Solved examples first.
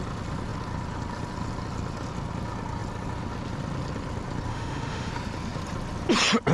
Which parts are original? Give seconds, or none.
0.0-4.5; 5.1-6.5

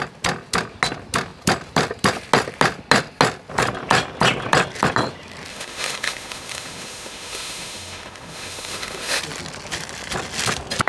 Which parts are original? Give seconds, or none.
0.0-5.5; 9.2-10.9

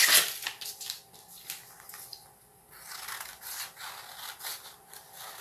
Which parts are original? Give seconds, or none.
0.0-5.4

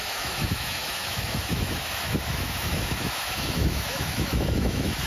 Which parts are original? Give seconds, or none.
none

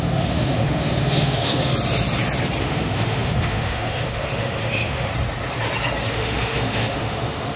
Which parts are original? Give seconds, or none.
1.7-2.6; 5.1-6.1